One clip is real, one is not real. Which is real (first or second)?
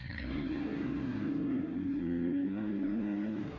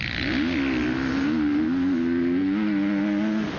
second